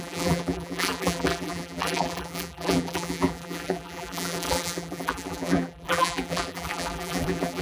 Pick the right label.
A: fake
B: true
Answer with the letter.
A